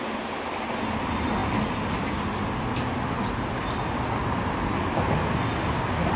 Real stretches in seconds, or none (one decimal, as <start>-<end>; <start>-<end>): 0.0-6.2

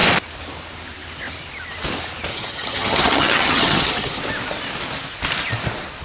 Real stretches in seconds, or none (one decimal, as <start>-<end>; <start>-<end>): 0.0-2.3; 4.2-6.0

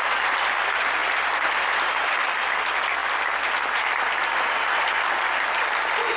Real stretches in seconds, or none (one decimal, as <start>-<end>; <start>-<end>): 0.0-6.2

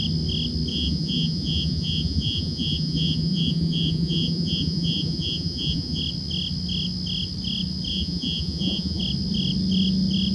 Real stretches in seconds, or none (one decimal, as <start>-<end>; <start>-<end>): 0.0-0.7; 6.0-7.9; 9.0-10.3

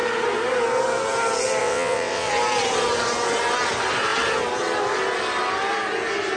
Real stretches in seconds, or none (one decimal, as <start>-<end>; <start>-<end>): 0.0-1.6; 2.3-6.4